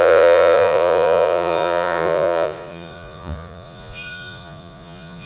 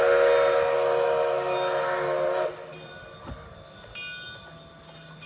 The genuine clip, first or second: second